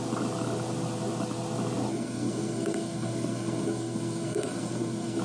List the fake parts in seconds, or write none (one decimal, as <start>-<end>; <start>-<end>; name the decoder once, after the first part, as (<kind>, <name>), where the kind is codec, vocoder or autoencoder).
1.9-5.2 (codec, SNAC)